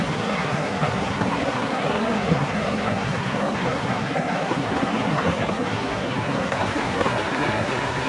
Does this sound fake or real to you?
fake